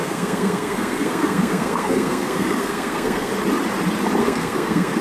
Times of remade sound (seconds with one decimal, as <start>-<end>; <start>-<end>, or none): 0.0-3.3; 4.2-5.0